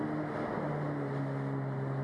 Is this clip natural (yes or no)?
yes